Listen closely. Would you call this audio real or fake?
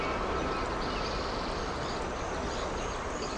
real